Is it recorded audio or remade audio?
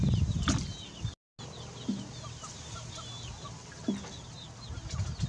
recorded